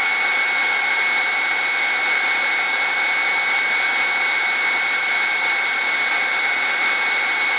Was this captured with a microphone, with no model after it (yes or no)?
yes